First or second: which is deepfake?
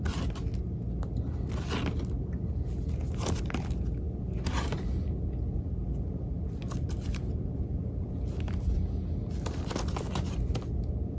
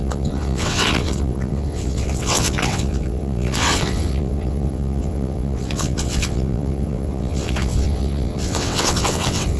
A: second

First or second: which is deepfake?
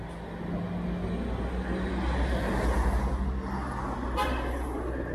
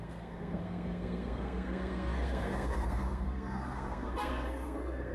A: second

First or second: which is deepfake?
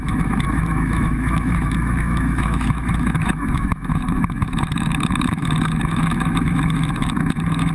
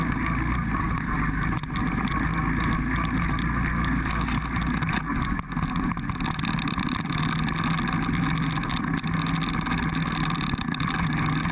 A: first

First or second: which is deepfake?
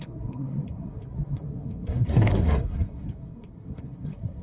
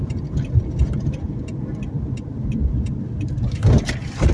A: first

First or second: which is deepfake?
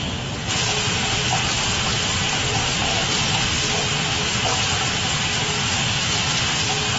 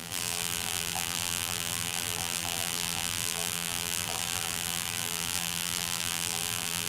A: second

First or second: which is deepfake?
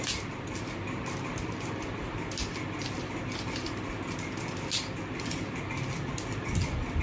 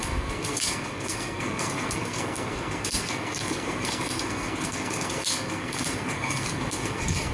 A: second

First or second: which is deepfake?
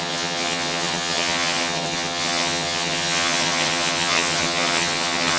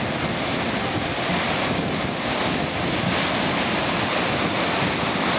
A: first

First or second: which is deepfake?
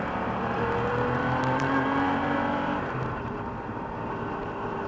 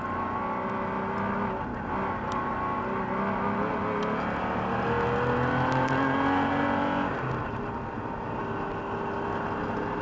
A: first